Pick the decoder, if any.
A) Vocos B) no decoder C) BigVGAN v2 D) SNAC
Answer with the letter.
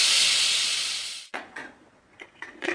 A